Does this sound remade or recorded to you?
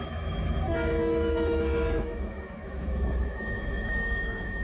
remade